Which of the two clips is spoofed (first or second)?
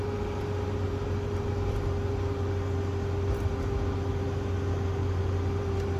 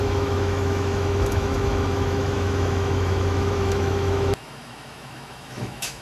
second